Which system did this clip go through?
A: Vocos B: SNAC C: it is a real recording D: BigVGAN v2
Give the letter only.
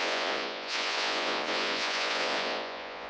A